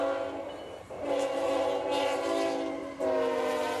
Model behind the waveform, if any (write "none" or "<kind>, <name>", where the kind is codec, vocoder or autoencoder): none